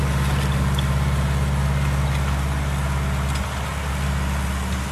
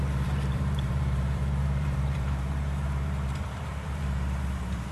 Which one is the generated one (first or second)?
second